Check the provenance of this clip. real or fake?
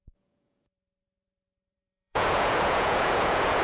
fake